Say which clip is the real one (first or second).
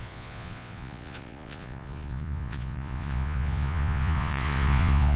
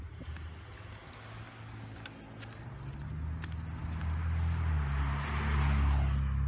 second